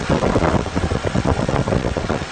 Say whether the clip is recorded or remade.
remade